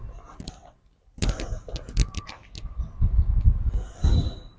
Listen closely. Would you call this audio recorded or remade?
recorded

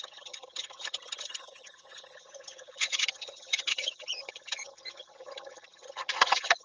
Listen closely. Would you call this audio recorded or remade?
remade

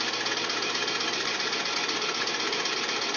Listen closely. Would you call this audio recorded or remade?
recorded